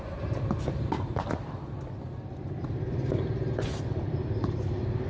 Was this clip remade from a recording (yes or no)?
no